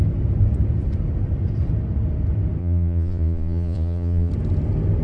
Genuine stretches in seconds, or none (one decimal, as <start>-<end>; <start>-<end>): 0.0-2.6; 4.3-5.0